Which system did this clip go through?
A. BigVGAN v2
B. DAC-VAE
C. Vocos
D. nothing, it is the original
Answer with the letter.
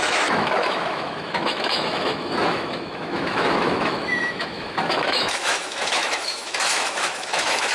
B